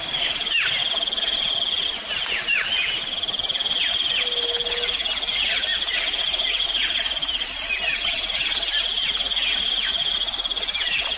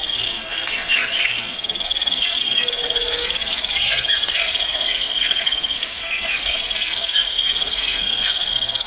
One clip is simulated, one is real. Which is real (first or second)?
first